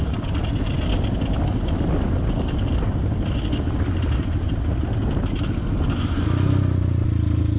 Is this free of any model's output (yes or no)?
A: yes